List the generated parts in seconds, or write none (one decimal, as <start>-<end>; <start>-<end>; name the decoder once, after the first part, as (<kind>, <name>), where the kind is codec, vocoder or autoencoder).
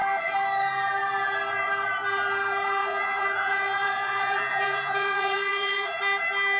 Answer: 2.8-6.0 (vocoder, Vocos)